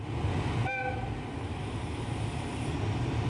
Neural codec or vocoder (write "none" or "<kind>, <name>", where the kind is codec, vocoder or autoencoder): none